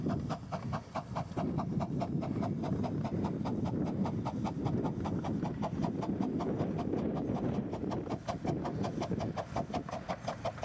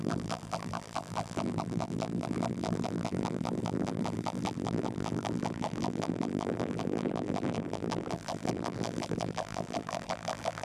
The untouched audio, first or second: first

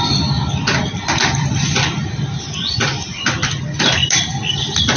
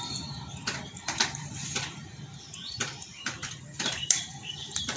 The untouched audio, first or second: first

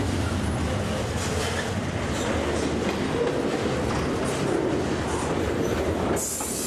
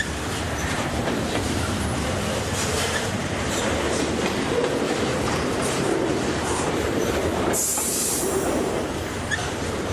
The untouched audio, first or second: first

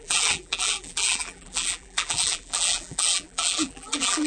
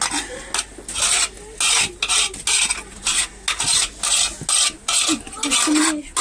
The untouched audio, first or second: second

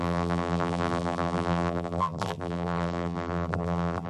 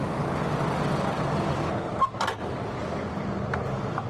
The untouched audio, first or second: second